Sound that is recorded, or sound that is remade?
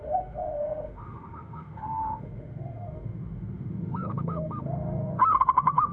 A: remade